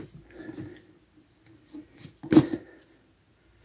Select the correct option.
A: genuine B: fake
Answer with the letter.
A